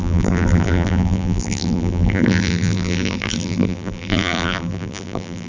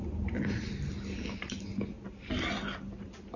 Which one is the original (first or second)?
second